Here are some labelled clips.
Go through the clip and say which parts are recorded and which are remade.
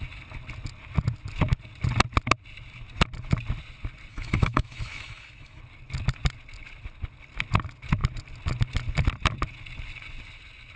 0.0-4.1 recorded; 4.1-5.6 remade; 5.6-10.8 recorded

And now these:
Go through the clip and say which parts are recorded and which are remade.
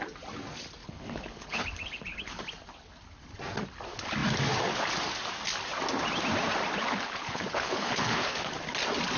0.0-0.8 recorded; 0.8-2.4 remade; 2.4-6.8 recorded; 6.8-8.5 remade; 8.5-9.2 recorded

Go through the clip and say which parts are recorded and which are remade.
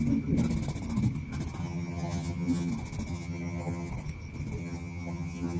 0.0-1.6 recorded; 1.6-2.7 remade; 2.7-3.1 recorded; 3.1-3.9 remade; 3.9-4.6 recorded; 4.6-5.6 remade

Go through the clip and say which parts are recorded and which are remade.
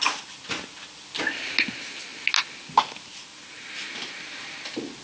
0.0-5.0 recorded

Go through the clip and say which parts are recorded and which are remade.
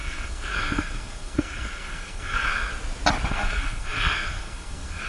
0.0-2.7 remade; 2.7-3.3 recorded; 3.3-5.1 remade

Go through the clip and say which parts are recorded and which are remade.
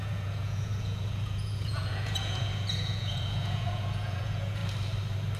0.0-4.6 remade; 4.6-5.4 recorded